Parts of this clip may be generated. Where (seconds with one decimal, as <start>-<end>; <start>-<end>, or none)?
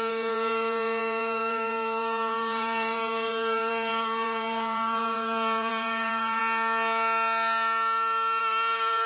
0.0-6.4; 8.4-9.1